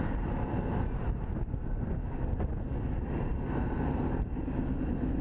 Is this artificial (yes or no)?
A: no